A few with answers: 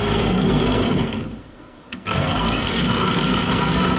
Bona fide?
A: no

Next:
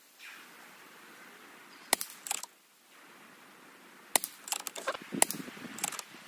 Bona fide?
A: yes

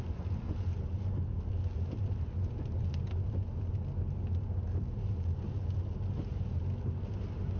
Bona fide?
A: yes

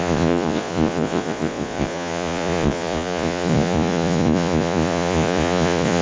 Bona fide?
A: no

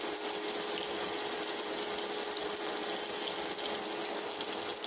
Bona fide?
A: yes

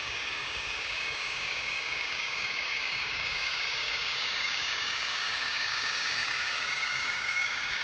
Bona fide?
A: no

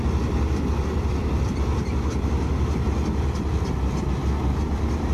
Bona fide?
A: yes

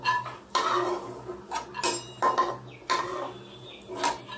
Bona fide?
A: yes